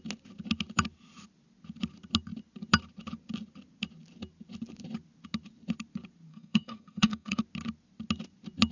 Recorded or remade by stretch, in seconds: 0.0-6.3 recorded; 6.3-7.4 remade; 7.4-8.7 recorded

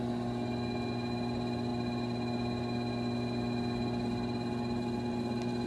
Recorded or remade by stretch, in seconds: 0.0-5.7 recorded

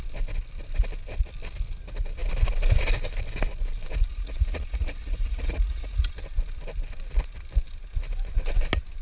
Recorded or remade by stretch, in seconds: 0.0-4.1 recorded; 4.1-6.1 remade; 6.1-9.0 recorded